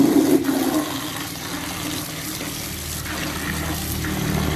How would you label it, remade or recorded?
recorded